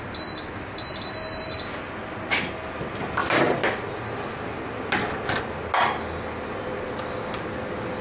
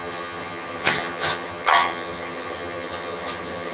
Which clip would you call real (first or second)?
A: first